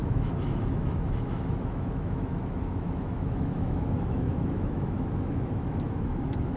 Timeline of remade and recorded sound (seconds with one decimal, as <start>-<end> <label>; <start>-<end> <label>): 0.0-6.6 remade